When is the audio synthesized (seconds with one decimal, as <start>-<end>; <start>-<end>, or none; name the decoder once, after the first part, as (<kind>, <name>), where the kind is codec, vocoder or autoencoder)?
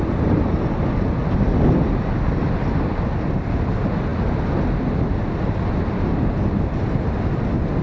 none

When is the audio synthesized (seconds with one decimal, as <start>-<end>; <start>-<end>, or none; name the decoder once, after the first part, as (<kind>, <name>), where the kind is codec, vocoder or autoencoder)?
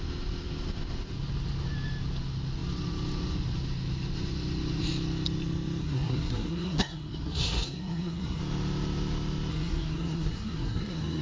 5.8-8.4 (codec, SNAC); 9.5-11.2